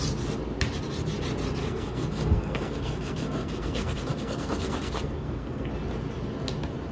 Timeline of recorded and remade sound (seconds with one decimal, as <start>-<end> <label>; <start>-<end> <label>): 0.0-1.6 recorded; 1.6-5.7 remade; 5.7-6.9 recorded

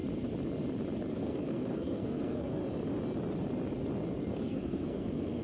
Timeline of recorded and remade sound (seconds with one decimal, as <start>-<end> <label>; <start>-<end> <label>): 0.0-1.1 recorded; 1.1-2.6 remade; 2.6-4.2 recorded; 4.2-5.4 remade

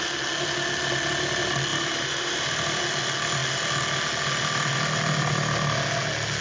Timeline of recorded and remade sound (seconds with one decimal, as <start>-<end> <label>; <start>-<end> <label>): 0.0-1.7 recorded; 1.7-2.8 remade; 2.8-6.4 recorded

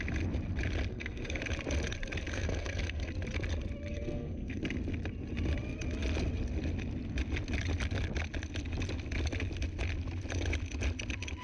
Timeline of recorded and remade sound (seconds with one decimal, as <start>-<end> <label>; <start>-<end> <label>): 0.0-0.9 recorded; 0.9-1.4 remade; 1.4-2.3 recorded; 2.3-3.1 remade; 3.1-3.9 recorded; 3.9-4.6 remade; 4.6-11.4 recorded